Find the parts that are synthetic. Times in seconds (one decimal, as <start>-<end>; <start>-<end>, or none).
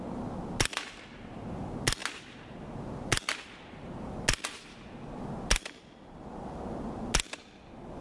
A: none